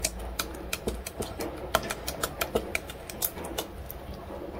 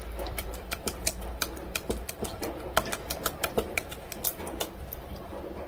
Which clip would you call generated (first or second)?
second